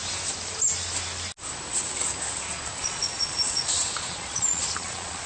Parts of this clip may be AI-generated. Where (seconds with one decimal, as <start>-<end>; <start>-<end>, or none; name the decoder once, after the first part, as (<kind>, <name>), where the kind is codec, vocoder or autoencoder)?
2.8-5.3 (vocoder, Vocos)